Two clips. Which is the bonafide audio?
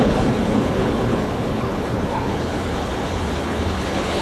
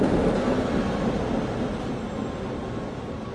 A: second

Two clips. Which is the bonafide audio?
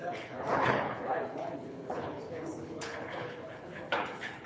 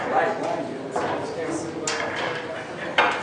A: second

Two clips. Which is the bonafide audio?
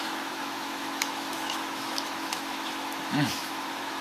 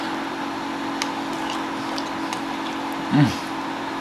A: second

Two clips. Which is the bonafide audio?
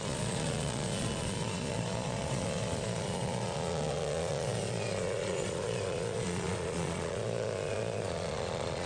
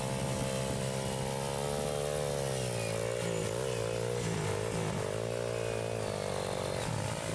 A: second